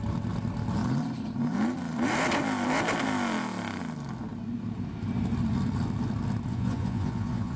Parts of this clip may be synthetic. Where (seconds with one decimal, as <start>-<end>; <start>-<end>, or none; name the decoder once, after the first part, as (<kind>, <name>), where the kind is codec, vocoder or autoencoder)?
6.5-7.6 (vocoder, Vocos)